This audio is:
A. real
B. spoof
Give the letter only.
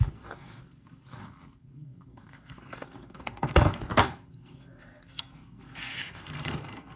B